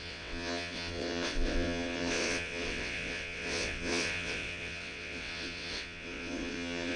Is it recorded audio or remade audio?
remade